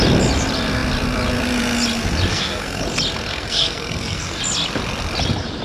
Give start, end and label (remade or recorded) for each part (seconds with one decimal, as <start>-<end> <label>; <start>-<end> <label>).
0.0-2.3 recorded; 2.3-2.8 remade; 2.8-3.3 recorded; 3.3-4.4 remade; 4.4-5.6 recorded